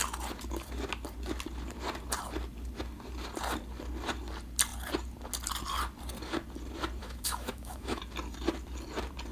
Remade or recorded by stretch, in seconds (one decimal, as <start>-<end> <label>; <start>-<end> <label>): 0.0-7.0 recorded; 7.0-8.0 remade; 8.0-9.3 recorded